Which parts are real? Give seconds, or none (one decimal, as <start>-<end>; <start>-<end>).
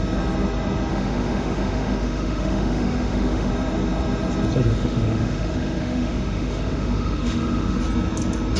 0.0-0.9; 3.5-4.7; 7.8-8.6